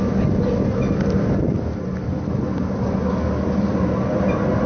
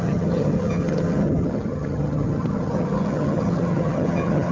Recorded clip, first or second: first